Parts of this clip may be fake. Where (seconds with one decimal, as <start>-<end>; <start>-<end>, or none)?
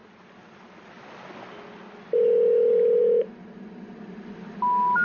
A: none